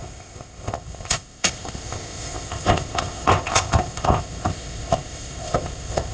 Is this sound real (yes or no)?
no